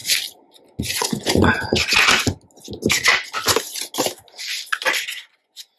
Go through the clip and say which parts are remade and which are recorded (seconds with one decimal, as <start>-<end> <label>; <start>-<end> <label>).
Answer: 0.0-0.8 recorded; 0.8-1.8 remade; 1.8-5.3 recorded; 5.3-5.8 remade

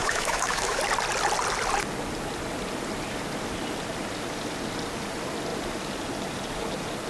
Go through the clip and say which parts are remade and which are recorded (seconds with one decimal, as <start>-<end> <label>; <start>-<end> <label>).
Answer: 0.0-0.8 remade; 0.8-7.1 recorded

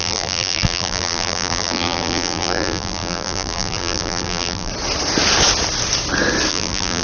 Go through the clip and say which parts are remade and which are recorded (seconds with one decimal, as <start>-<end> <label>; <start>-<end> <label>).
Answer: 0.0-4.7 remade; 4.7-6.5 recorded; 6.5-7.0 remade

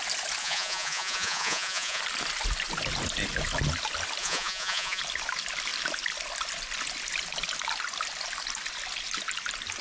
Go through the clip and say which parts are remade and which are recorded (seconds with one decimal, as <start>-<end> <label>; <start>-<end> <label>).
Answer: 0.0-0.4 recorded; 0.4-2.0 remade; 2.0-4.2 recorded; 4.2-5.0 remade; 5.0-9.8 recorded

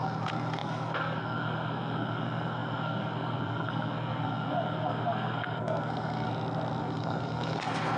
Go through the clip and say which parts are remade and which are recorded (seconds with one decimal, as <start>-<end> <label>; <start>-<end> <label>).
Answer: 0.0-6.3 remade; 6.3-6.8 recorded; 6.8-8.0 remade

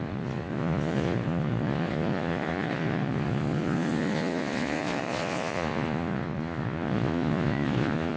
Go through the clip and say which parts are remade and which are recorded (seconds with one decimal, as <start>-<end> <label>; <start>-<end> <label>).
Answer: 0.0-8.2 remade

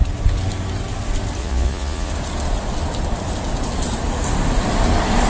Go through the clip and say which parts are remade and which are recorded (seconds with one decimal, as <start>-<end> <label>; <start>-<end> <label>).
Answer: 0.0-1.4 recorded; 1.4-2.1 remade; 2.1-5.3 recorded